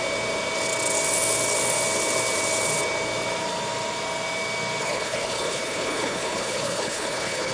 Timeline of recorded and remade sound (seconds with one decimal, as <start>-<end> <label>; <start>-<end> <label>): 0.0-4.8 recorded; 4.8-7.5 remade